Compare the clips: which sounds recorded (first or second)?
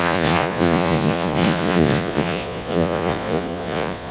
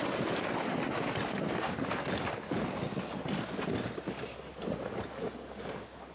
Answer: second